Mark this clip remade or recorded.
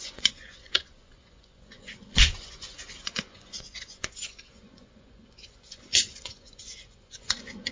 remade